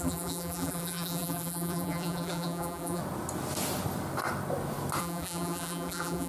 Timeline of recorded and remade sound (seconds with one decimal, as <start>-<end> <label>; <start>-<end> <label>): 0.0-3.0 remade; 3.0-5.0 recorded; 5.0-6.3 remade